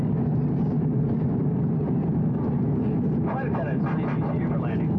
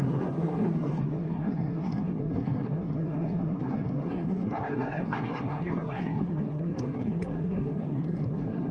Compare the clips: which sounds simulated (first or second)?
second